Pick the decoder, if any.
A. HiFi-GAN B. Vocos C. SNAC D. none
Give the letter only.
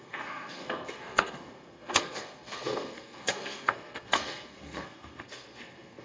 C